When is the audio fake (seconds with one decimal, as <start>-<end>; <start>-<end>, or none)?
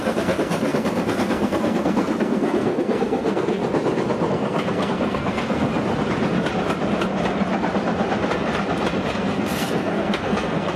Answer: 0.0-3.6; 4.3-5.7; 9.1-10.8